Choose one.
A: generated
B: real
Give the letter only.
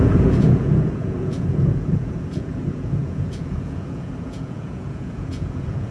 A